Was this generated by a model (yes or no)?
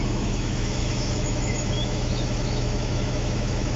yes